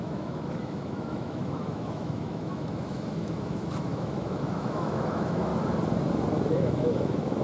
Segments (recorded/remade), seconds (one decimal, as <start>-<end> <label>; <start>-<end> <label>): 0.0-5.5 remade; 5.5-6.5 recorded; 6.5-7.4 remade